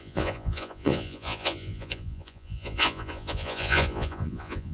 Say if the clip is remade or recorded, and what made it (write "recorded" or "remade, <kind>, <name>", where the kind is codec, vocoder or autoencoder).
remade, vocoder, Vocos